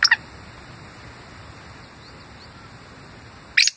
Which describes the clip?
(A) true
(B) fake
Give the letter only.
A